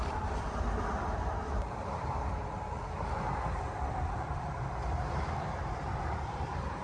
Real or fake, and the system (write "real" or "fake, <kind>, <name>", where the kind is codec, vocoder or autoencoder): fake, vocoder, BigVGAN v2